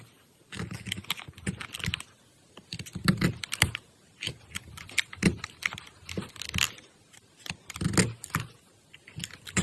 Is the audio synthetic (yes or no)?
no